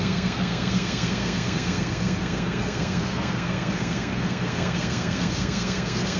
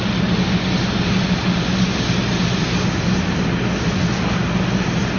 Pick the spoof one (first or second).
first